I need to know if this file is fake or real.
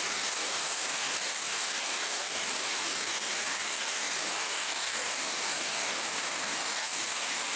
fake